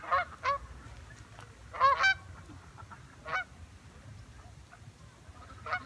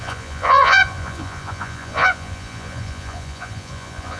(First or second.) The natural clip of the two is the first